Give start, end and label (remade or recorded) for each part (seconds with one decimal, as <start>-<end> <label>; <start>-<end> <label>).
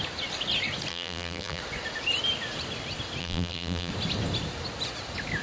0.0-0.9 recorded; 0.9-1.6 remade; 1.6-3.2 recorded; 3.2-3.9 remade; 3.9-5.4 recorded